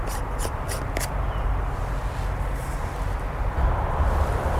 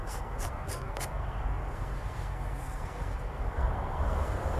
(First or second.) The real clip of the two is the first